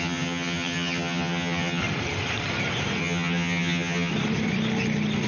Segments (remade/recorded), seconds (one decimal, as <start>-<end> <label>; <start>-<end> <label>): 0.0-1.8 remade; 1.8-3.0 recorded; 3.0-4.1 remade; 4.1-5.3 recorded